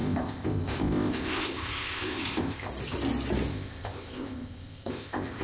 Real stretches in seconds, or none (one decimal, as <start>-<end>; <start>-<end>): 2.7-3.5